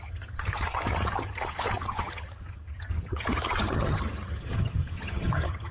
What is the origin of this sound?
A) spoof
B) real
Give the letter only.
A